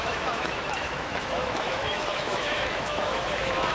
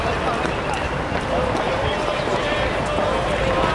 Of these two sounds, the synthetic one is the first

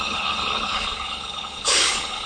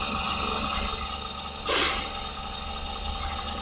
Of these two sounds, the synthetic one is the first